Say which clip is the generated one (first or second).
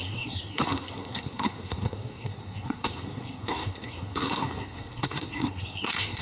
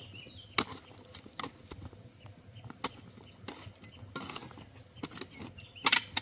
first